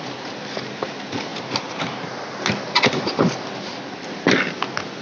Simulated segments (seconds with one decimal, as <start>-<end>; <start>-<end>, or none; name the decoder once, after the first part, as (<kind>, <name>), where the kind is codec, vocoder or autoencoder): none